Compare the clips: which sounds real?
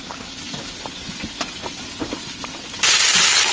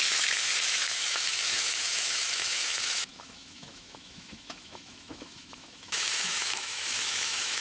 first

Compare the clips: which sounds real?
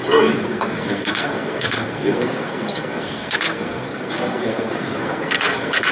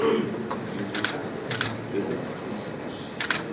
second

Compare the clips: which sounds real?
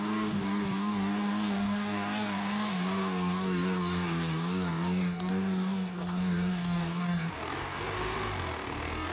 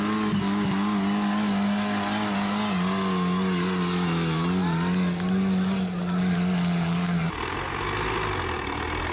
second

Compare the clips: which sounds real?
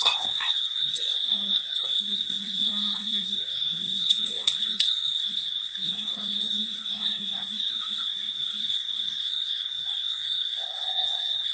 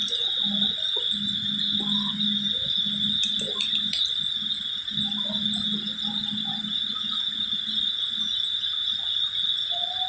second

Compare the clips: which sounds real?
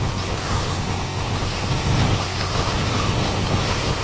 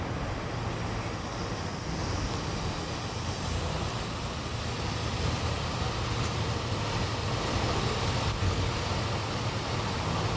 second